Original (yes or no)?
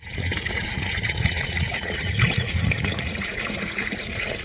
no